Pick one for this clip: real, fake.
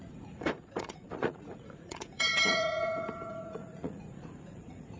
fake